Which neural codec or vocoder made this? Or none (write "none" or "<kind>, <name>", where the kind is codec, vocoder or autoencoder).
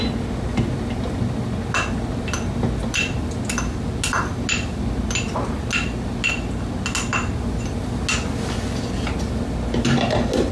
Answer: none